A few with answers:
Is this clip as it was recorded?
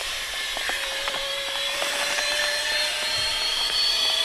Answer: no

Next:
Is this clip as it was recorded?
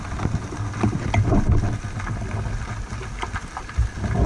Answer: yes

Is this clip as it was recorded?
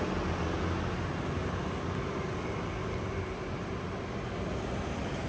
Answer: yes